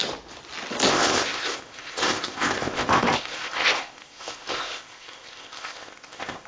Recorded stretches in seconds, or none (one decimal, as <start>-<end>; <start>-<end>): 0.0-0.9